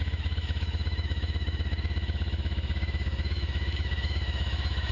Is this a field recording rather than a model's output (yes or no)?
no